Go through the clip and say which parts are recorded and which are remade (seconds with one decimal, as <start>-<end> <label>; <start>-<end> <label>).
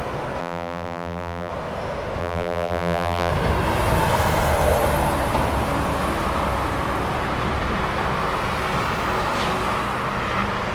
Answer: 0.0-0.4 recorded; 0.4-1.5 remade; 1.5-2.2 recorded; 2.2-3.3 remade; 3.3-10.7 recorded